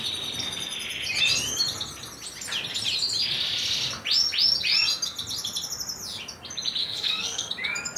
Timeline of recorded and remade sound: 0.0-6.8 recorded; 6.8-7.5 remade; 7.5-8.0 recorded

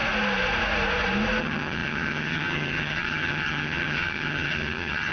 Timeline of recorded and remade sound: 0.0-1.4 recorded; 1.4-5.1 remade

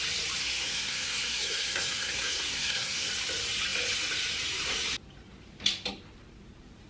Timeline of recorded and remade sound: 0.0-0.4 recorded; 0.4-3.1 remade; 3.1-6.9 recorded

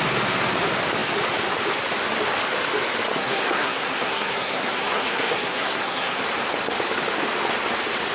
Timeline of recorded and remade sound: 0.0-3.1 recorded; 3.1-6.2 remade; 6.2-8.1 recorded